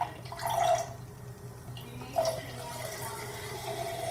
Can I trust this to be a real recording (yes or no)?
yes